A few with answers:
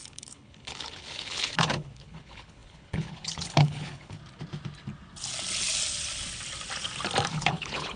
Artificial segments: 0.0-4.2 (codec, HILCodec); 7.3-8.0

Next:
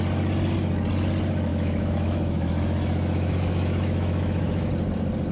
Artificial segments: 1.5-4.7 (autoencoder, DAC-VAE)

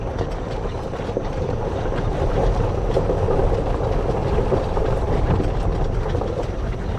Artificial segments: 1.2-3.4 (vocoder, BigVGAN v2); 4.2-5.4

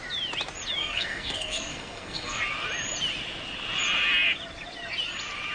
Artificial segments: 0.8-2.4 (codec, SNAC)

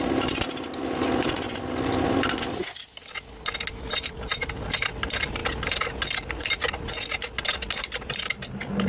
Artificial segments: 0.0-2.8 (vocoder, BigVGAN v2); 3.7-5.4

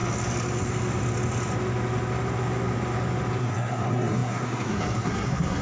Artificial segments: 3.4-5.6 (codec, SNAC)

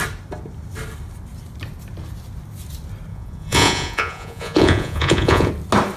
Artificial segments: 3.1-5.5 (vocoder, Vocos)

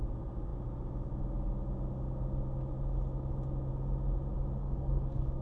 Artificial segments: 4.6-5.4 (codec, SNAC)